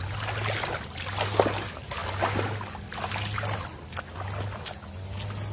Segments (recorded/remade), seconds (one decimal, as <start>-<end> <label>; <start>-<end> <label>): 0.0-5.5 recorded